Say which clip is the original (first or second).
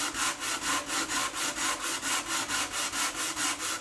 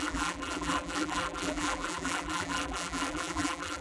first